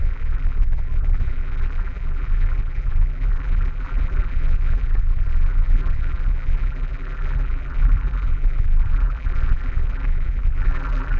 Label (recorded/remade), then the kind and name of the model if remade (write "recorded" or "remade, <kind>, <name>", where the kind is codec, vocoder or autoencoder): remade, vocoder, BigVGAN v2